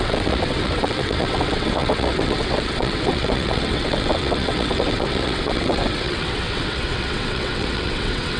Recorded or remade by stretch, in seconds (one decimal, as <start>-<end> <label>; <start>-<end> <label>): 0.0-8.4 remade